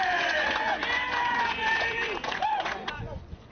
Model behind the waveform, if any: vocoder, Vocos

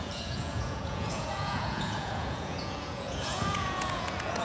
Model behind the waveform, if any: vocoder, Vocos